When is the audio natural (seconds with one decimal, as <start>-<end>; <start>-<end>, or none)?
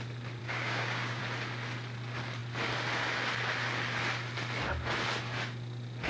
0.0-0.4; 1.2-6.1